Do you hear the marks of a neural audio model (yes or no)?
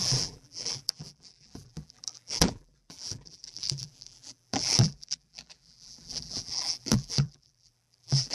yes